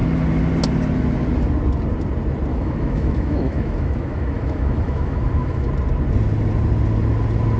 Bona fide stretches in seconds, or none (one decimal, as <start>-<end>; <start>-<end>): 0.0-2.5; 5.7-7.6